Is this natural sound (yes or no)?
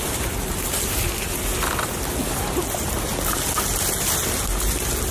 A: yes